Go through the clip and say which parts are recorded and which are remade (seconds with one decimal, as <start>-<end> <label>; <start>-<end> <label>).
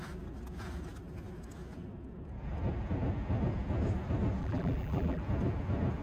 0.0-4.4 recorded; 4.4-5.2 remade; 5.2-6.0 recorded